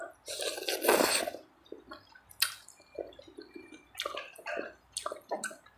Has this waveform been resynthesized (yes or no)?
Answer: no